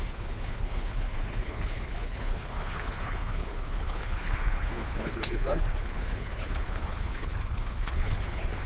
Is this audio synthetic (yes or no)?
yes